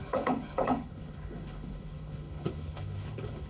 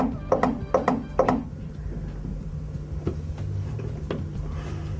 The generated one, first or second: first